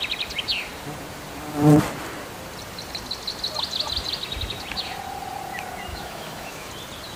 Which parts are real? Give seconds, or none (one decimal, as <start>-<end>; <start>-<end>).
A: 0.0-5.9; 6.7-7.2

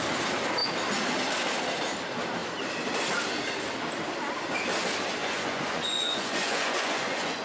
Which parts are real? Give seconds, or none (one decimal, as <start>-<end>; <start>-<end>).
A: 0.0-5.2

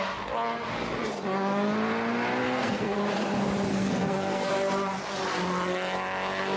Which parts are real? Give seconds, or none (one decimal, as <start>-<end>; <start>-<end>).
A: 0.0-2.4; 3.0-3.7; 4.5-6.6

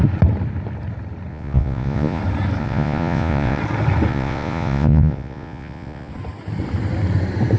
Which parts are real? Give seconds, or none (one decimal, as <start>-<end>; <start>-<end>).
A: 0.0-1.3; 2.2-2.6; 3.6-4.1; 6.1-7.6